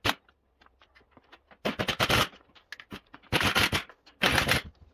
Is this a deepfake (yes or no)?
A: no